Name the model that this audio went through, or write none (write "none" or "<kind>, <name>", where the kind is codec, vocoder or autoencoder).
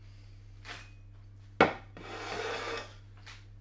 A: none